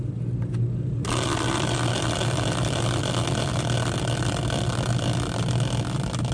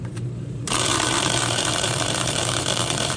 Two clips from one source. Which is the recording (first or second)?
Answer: first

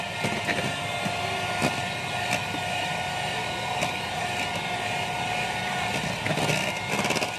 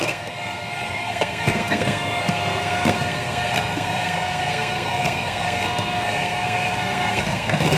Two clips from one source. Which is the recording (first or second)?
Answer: first